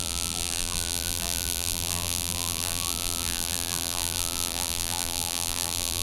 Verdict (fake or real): fake